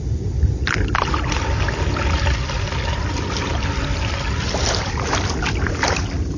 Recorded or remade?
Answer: recorded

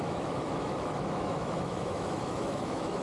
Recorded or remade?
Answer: remade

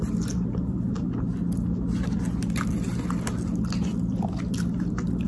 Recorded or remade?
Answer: recorded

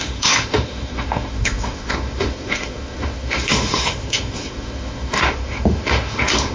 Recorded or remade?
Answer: remade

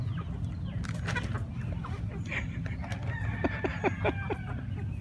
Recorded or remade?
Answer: recorded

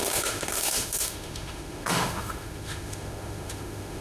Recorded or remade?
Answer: remade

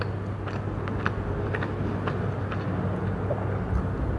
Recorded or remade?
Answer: recorded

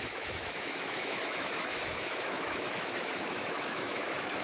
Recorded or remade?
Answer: remade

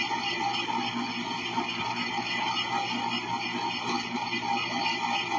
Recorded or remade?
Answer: recorded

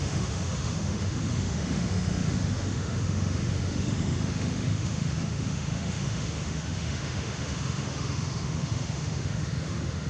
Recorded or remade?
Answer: remade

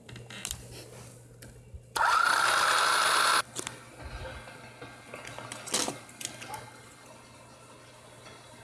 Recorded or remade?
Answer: recorded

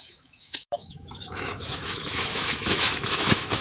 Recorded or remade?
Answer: remade